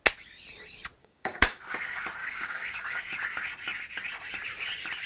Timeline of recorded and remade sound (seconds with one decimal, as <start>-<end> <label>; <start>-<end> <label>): 0.0-1.0 recorded; 1.0-1.6 remade; 1.6-2.2 recorded; 2.2-3.0 remade; 3.0-5.1 recorded

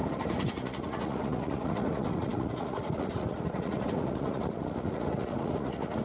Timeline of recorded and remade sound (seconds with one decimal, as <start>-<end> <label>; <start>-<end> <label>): 0.0-6.0 remade

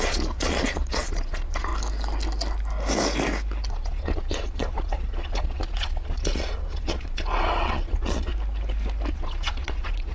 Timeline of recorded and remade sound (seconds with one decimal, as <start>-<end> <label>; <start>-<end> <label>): 0.0-1.7 remade; 1.7-3.7 recorded; 3.7-8.3 remade; 8.3-9.1 recorded; 9.1-10.1 remade

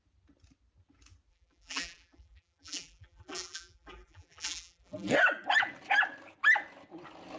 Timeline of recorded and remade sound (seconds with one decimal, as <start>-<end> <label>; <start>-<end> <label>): 0.0-1.3 recorded; 1.3-5.1 remade; 5.1-7.4 recorded